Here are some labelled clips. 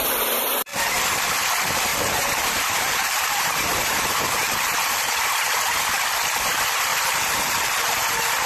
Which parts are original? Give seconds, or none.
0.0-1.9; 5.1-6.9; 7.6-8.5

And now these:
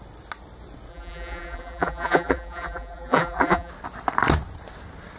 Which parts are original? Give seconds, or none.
0.0-0.9; 3.7-5.2

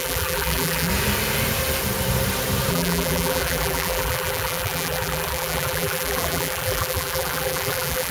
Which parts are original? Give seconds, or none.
0.9-2.7